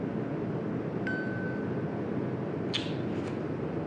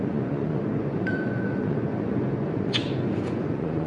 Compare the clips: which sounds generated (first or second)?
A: second